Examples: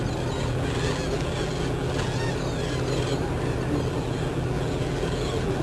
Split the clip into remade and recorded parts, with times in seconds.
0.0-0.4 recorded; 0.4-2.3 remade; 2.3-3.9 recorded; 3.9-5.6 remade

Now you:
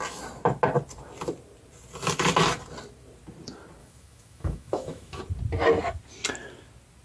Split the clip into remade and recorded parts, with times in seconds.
0.0-3.8 recorded; 3.8-5.2 remade; 5.2-7.0 recorded

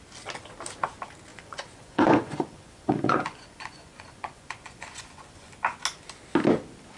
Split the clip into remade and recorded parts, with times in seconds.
0.0-1.3 recorded; 1.3-5.5 remade; 5.5-7.0 recorded

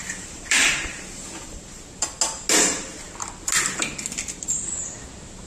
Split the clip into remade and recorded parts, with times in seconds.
0.0-1.8 remade; 1.8-5.5 recorded

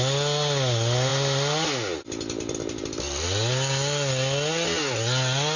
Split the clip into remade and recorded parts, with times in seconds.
0.0-5.6 recorded

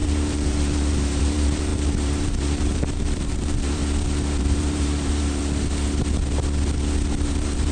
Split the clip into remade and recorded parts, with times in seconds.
0.0-3.8 remade; 3.8-4.4 recorded; 4.4-5.4 remade; 5.4-7.3 recorded; 7.3-7.7 remade

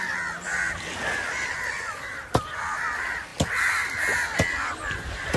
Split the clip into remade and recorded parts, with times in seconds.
0.0-5.4 recorded